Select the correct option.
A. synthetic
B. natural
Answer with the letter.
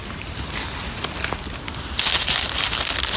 B